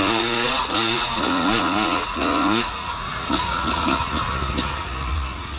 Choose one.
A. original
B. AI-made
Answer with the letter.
B